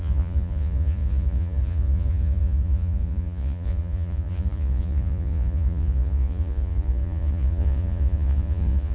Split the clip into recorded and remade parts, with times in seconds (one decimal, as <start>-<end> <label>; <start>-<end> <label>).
0.0-8.9 remade